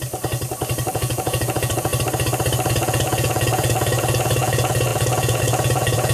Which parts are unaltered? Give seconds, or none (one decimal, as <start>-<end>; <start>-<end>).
0.0-0.9; 1.9-2.7